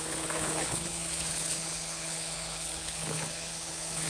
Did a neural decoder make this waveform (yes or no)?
yes